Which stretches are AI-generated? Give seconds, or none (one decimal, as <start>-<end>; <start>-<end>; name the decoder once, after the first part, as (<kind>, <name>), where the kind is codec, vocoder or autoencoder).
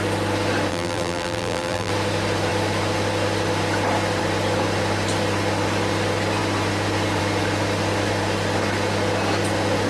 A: 0.7-1.9 (vocoder, BigVGAN v2)